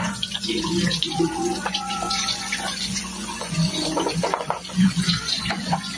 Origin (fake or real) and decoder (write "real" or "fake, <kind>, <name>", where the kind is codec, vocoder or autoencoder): fake, vocoder, Vocos